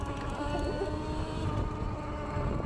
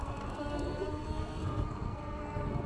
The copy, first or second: second